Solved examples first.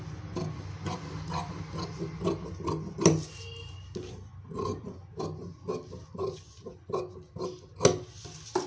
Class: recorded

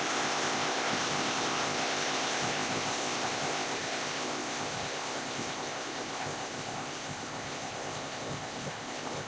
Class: remade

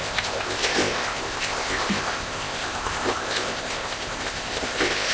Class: remade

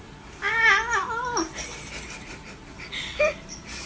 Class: recorded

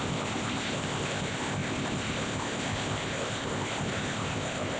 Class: remade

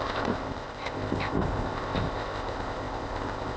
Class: remade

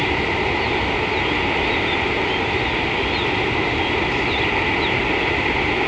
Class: recorded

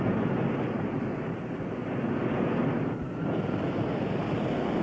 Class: recorded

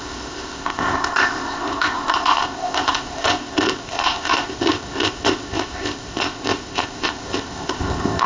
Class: remade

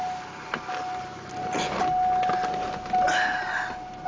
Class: recorded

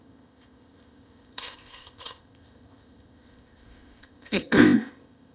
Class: remade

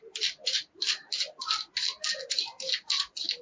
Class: recorded